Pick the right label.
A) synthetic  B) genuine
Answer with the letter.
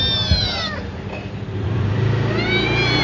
B